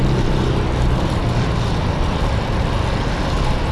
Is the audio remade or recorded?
recorded